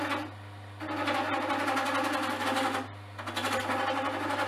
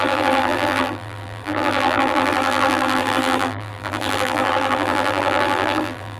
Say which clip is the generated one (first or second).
second